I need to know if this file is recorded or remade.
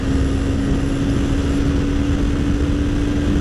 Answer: recorded